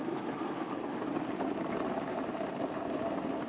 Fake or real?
real